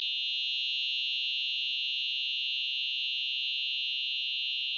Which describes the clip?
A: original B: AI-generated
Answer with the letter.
A